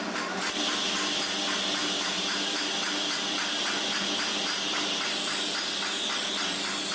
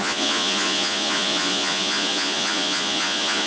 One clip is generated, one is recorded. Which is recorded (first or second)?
first